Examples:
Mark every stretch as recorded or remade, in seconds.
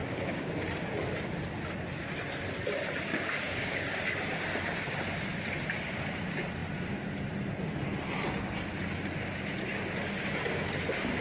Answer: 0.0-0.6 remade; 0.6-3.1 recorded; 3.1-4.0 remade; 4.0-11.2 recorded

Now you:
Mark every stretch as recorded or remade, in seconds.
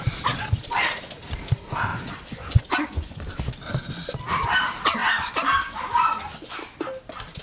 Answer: 0.0-1.9 recorded; 1.9-3.3 remade; 3.3-7.4 recorded